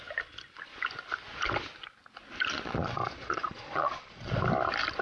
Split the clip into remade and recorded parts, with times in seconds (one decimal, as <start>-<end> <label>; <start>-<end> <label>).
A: 0.0-2.5 recorded; 2.5-4.3 remade; 4.3-5.0 recorded